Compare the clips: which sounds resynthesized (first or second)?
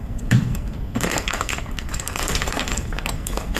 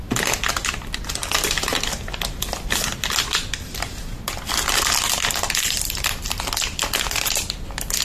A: first